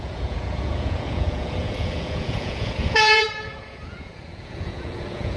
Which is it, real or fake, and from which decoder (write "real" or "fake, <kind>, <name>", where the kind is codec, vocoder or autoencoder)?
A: fake, vocoder, Vocos